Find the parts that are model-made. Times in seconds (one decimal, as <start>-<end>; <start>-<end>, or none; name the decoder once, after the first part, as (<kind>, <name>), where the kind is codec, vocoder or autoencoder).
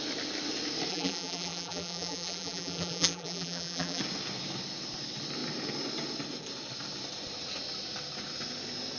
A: 0.9-4.0 (vocoder, BigVGAN v2)